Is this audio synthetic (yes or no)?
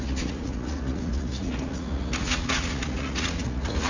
yes